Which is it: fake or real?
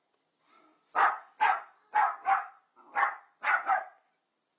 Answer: real